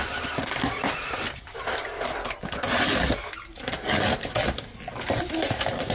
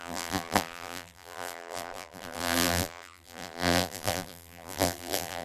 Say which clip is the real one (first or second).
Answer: first